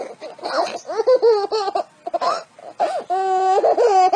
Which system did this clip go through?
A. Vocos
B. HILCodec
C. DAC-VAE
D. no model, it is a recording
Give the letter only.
D